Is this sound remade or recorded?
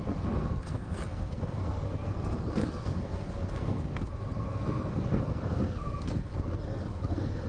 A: remade